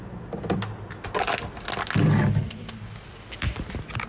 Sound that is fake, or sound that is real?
real